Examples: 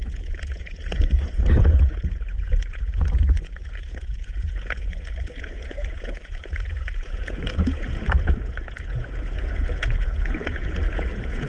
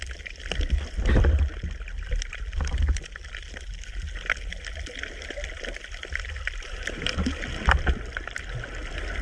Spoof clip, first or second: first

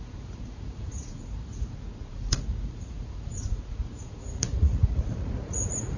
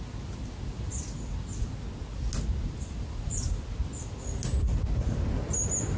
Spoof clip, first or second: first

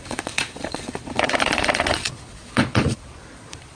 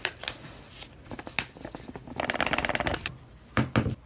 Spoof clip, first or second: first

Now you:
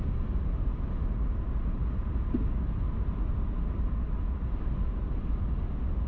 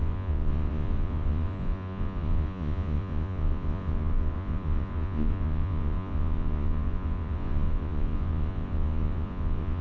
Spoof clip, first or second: second